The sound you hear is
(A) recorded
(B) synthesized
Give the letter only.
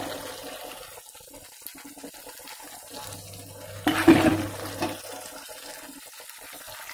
A